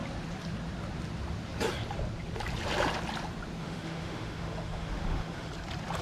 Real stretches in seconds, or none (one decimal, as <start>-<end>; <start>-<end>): 0.0-3.6; 5.5-6.0